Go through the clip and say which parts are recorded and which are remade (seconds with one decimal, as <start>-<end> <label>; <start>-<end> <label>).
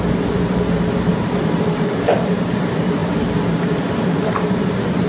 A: 0.0-5.1 remade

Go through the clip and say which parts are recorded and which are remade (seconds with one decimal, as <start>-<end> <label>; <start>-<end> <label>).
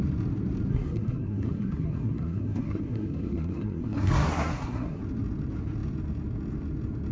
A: 0.0-0.7 recorded; 0.7-5.0 remade; 5.0-7.1 recorded